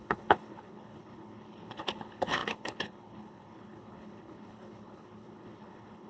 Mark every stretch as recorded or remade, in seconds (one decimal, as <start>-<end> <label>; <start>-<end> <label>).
0.0-6.1 remade